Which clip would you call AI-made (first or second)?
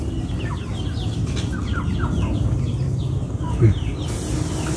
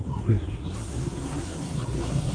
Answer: second